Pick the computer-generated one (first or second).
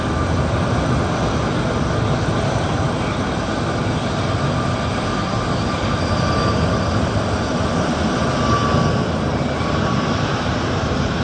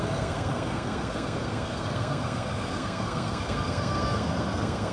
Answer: second